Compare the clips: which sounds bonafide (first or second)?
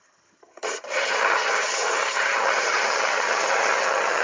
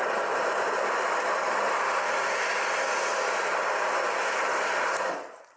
second